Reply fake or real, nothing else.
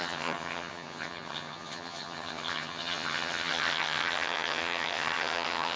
fake